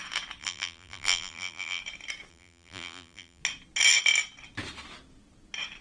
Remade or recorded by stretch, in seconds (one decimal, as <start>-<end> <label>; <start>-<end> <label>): 0.0-0.4 recorded; 0.4-1.8 remade; 1.8-2.3 recorded; 2.3-3.4 remade; 3.4-5.8 recorded